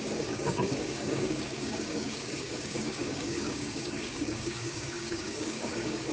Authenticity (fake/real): fake